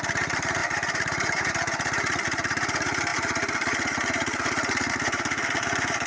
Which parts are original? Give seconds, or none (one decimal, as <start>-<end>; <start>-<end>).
none